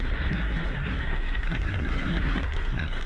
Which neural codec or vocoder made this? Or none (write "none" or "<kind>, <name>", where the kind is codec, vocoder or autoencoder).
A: codec, SNAC